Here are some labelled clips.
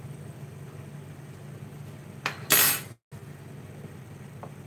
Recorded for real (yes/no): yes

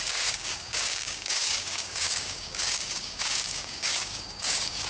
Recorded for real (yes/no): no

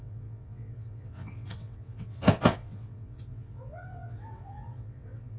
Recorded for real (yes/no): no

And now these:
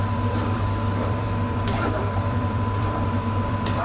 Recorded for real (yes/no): no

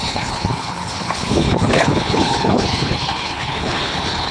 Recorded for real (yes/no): no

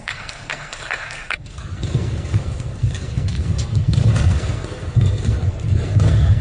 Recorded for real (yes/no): no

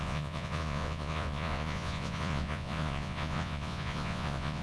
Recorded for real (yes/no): no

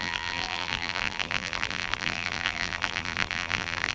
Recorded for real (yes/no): no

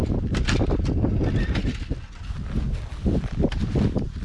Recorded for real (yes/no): yes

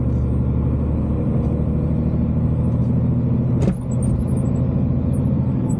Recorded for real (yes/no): yes